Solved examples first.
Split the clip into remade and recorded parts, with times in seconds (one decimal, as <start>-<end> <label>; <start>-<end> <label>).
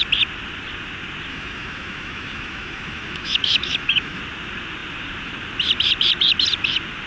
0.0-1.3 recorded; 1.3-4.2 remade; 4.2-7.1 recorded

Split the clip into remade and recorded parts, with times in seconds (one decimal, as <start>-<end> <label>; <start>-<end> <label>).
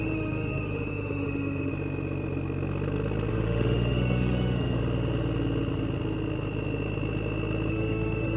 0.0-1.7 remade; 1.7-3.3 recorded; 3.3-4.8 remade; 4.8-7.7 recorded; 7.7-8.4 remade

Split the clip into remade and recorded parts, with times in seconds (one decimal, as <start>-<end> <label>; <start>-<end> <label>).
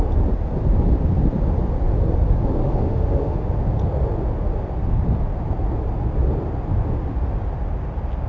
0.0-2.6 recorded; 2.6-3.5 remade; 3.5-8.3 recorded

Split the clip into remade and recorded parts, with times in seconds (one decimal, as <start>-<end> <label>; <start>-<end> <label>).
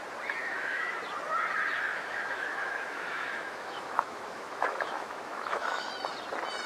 0.0-0.4 recorded; 0.4-1.0 remade; 1.0-1.9 recorded; 1.9-5.9 remade; 5.9-6.7 recorded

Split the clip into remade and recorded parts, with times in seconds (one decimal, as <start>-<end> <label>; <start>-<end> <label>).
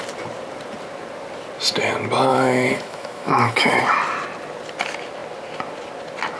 0.0-2.3 recorded; 2.3-3.8 remade; 3.8-6.4 recorded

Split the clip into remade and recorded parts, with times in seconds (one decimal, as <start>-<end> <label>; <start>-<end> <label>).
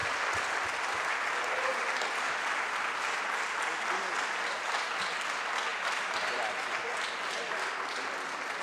0.0-8.6 recorded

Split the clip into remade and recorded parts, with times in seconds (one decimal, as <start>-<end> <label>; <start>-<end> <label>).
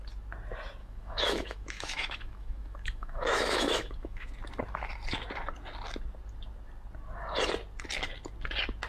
0.0-0.8 recorded; 0.8-4.3 remade; 4.3-8.9 recorded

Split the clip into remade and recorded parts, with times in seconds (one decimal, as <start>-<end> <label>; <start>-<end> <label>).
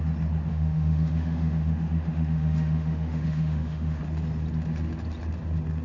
0.0-0.5 recorded; 0.5-4.0 remade; 4.0-5.8 recorded